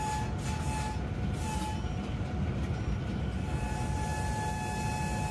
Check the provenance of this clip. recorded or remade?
recorded